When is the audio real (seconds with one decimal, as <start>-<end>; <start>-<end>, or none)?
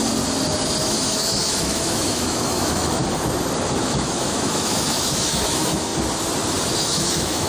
0.0-0.8; 3.0-3.8; 5.9-6.7